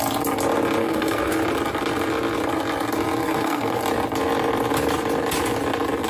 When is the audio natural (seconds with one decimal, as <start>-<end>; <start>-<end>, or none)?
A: 0.0-0.8; 1.3-3.2; 3.8-6.1